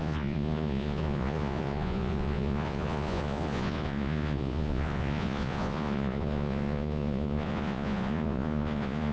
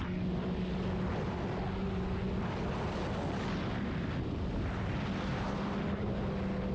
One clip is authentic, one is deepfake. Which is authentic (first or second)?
second